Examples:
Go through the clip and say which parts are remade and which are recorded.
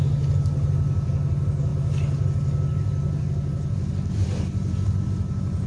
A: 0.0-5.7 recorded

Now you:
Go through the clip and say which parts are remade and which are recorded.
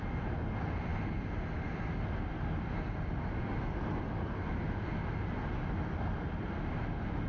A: 0.0-7.3 recorded